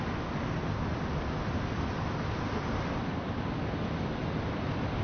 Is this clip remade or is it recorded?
recorded